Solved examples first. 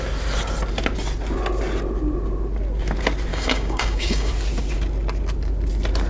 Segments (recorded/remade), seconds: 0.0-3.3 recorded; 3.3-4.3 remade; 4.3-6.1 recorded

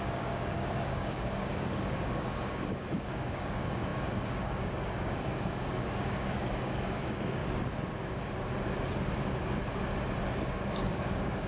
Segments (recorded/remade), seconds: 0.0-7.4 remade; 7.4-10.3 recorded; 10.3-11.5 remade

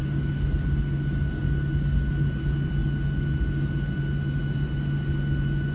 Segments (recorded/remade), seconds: 0.0-5.7 recorded

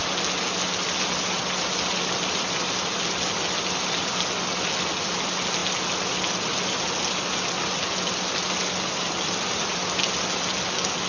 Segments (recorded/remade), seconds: 0.0-11.1 recorded